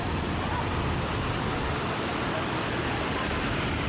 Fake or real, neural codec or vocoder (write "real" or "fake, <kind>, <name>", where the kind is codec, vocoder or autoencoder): real